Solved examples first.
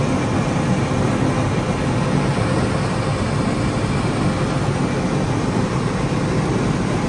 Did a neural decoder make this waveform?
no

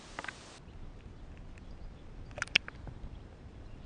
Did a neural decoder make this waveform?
no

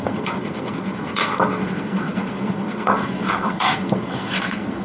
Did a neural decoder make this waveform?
yes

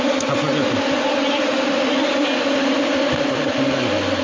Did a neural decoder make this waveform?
no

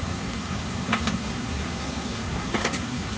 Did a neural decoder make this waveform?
yes